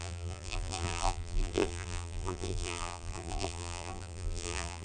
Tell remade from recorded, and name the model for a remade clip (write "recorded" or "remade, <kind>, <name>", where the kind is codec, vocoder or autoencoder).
remade, vocoder, BigVGAN v2